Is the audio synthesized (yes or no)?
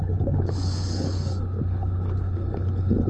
yes